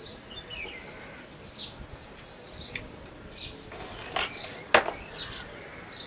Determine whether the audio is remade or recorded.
recorded